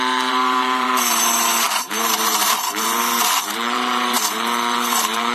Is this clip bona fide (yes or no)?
no